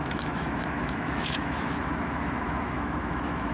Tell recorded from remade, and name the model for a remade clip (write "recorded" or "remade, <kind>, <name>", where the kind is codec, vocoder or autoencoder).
remade, autoencoder, DAC-VAE